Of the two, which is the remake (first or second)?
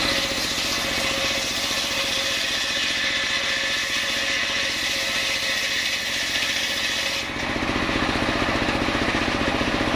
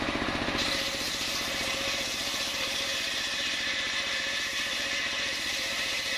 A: second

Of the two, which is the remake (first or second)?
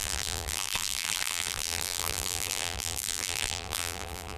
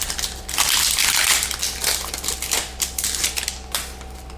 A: first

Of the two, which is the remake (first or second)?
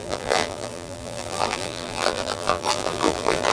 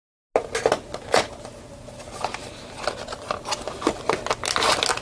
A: first